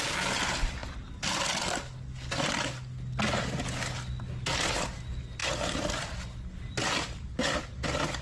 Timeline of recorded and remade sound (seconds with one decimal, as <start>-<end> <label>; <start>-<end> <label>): 0.0-8.2 recorded